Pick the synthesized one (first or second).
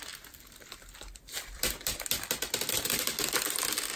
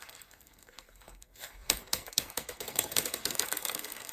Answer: second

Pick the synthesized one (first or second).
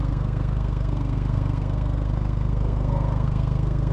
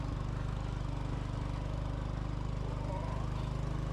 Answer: first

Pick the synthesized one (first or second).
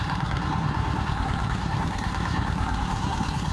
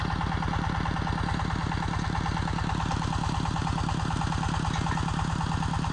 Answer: first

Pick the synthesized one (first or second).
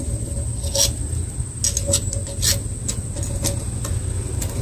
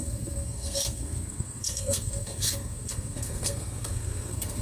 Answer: second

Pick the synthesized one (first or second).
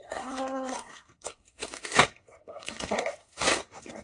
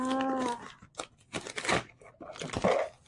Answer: first